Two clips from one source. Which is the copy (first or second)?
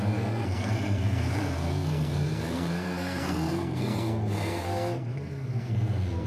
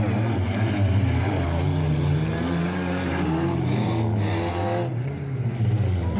first